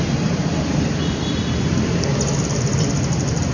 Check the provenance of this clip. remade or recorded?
recorded